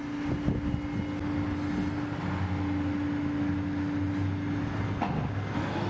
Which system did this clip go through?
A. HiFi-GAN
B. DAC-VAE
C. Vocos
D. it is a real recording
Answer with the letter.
D